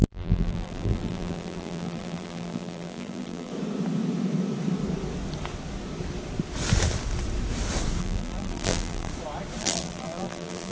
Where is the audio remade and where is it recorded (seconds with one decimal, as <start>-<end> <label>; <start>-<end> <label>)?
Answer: 0.0-3.5 remade; 3.5-8.0 recorded; 8.0-9.1 remade; 9.1-9.6 recorded; 9.6-10.7 remade